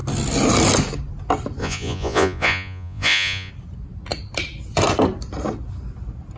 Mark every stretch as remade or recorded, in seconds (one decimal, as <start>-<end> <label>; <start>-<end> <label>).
0.0-1.6 recorded; 1.6-3.5 remade; 3.5-6.4 recorded